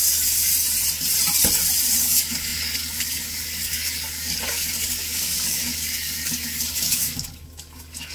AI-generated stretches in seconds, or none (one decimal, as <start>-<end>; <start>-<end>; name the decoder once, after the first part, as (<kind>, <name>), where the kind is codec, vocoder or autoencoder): 0.0-0.5 (codec, DAC); 2.0-8.1

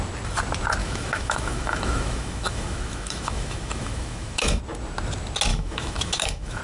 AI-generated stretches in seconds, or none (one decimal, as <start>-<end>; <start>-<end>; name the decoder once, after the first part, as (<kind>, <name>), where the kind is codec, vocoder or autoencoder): 0.8-4.6 (autoencoder, DAC-VAE); 5.5-6.6

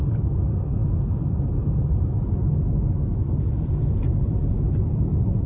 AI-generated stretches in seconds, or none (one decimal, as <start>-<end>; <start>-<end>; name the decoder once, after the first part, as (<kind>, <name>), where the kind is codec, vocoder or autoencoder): none